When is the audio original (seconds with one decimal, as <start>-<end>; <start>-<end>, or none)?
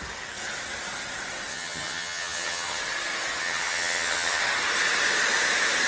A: 0.0-1.5; 2.8-3.4; 4.4-5.9